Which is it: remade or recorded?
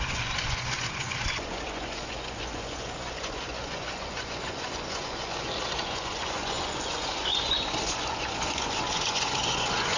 remade